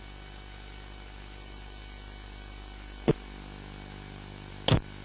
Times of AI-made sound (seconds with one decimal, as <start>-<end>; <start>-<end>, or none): none